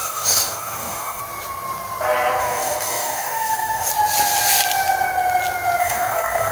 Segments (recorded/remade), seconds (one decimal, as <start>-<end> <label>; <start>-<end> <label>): 0.0-1.2 remade; 1.2-2.4 recorded; 2.4-3.9 remade; 3.9-5.8 recorded; 5.8-6.5 remade